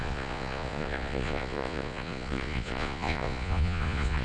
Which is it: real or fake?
fake